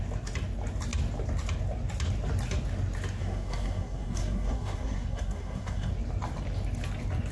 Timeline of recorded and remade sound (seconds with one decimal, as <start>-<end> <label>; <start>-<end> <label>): 0.0-3.2 recorded; 3.2-5.9 remade; 5.9-7.3 recorded